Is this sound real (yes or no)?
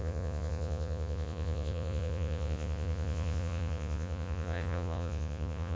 no